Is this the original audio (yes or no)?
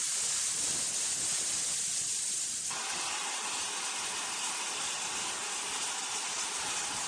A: yes